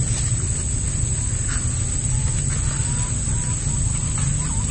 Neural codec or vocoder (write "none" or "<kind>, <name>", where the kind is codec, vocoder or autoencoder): none